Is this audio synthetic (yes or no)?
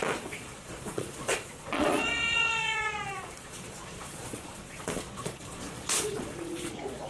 yes